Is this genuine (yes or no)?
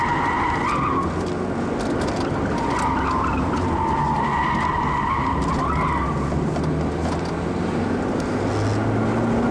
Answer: yes